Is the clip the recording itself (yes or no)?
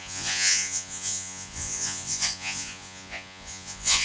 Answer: no